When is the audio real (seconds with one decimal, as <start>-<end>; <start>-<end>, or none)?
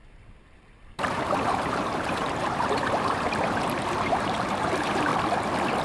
5.1-5.8